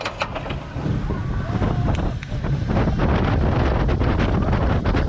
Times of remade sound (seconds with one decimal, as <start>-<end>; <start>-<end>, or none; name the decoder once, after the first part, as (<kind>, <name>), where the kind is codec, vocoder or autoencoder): none